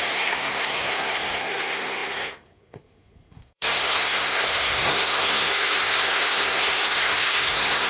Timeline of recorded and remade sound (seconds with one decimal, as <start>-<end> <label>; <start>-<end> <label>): 0.0-7.9 remade

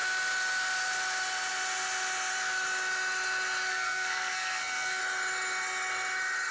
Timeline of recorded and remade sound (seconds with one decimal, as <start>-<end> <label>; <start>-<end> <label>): 0.0-3.7 recorded; 3.7-5.0 remade; 5.0-6.5 recorded

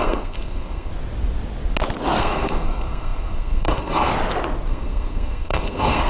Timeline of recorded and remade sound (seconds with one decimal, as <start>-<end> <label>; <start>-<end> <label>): 0.0-0.9 remade; 0.9-2.2 recorded; 2.2-4.1 remade; 4.1-4.7 recorded; 4.7-6.1 remade

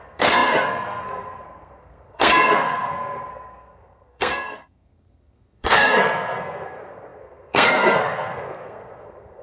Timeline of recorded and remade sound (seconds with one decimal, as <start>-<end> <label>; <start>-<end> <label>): 0.0-9.4 remade

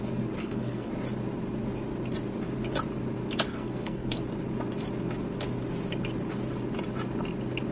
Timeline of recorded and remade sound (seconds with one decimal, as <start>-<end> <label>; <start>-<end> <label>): 0.0-0.4 recorded; 0.4-0.9 remade; 0.9-3.5 recorded; 3.5-4.2 remade; 4.2-7.7 recorded

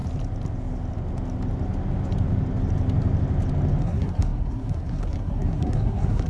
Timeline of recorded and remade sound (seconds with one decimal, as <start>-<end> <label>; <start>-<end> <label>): 0.0-3.8 recorded; 3.8-6.3 remade